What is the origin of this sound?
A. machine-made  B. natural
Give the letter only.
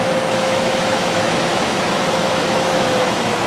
A